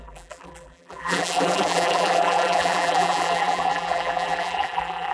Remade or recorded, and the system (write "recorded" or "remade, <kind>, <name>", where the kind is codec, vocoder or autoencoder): remade, vocoder, BigVGAN v2